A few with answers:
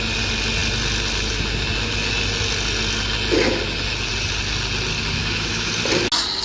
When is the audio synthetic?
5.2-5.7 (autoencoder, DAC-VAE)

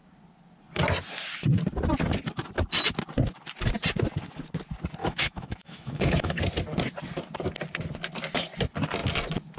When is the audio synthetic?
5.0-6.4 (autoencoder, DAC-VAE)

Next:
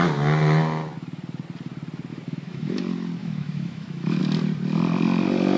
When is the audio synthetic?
2.1-2.8 (autoencoder, DAC-VAE); 3.2-4.2